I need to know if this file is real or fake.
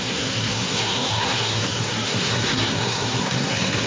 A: fake